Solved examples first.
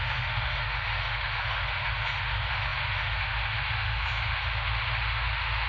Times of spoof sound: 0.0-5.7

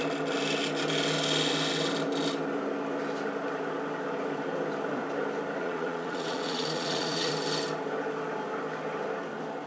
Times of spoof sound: 5.6-7.3

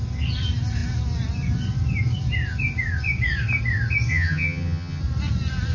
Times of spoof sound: 4.1-5.0

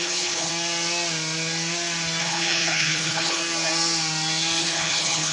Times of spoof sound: 0.0-0.5; 2.2-3.4; 4.6-5.3

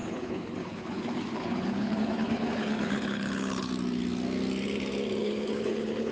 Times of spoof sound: 0.0-3.7; 5.2-6.1

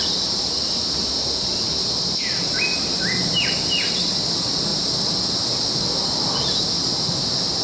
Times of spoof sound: none